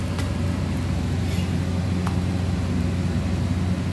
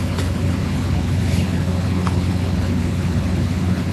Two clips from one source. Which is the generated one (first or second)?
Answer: second